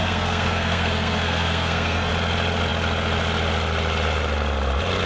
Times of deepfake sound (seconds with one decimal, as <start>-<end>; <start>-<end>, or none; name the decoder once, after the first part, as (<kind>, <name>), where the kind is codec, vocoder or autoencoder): 0.0-2.1 (codec, SNAC)